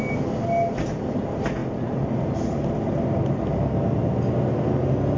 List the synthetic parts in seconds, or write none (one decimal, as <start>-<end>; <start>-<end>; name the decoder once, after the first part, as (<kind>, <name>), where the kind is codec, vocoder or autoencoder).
none